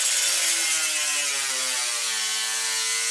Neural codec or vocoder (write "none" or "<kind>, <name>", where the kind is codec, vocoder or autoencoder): none